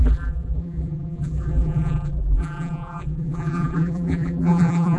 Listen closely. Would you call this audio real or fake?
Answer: fake